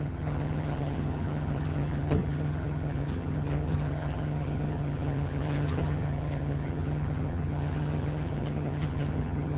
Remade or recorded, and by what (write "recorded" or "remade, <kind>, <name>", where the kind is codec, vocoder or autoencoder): remade, vocoder, HiFi-GAN